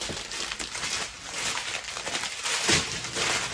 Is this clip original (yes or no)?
yes